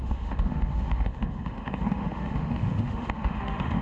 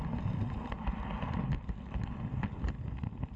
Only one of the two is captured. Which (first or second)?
second